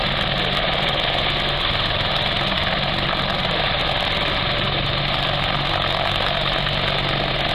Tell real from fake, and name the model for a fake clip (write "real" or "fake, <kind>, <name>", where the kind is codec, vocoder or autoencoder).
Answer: real